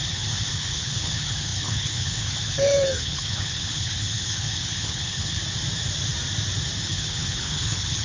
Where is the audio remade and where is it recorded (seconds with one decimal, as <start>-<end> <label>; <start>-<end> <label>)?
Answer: 0.0-5.4 remade; 5.4-6.8 recorded; 6.8-8.0 remade